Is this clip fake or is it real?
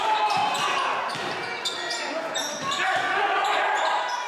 real